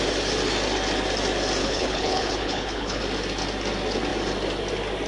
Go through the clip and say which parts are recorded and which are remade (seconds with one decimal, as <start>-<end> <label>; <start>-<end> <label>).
0.0-1.6 recorded; 1.6-3.0 remade; 3.0-5.1 recorded